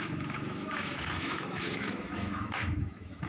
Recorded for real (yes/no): no